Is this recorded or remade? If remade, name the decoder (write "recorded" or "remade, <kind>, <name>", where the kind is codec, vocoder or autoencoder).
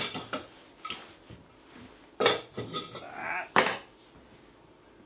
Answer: recorded